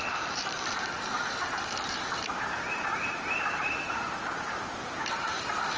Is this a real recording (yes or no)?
no